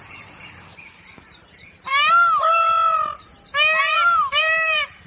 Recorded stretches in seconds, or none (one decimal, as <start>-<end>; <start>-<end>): 1.9-3.8